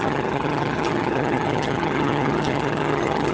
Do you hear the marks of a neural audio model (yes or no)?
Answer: yes